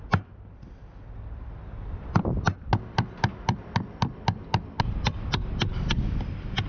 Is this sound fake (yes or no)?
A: no